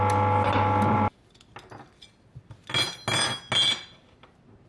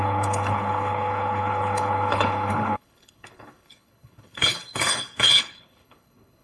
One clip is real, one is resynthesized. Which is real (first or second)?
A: first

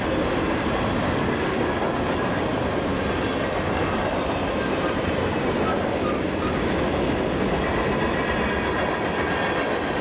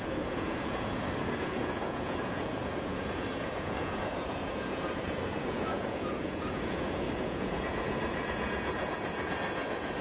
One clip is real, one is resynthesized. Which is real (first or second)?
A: first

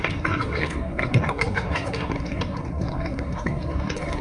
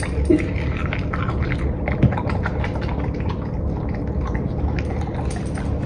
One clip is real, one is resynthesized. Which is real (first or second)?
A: second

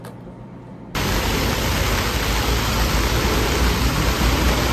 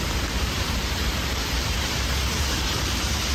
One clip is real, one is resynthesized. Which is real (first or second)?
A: first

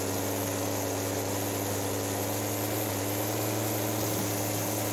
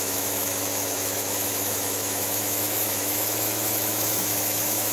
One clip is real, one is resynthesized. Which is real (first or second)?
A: first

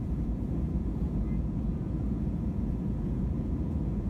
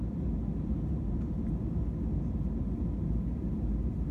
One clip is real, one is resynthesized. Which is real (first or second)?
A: second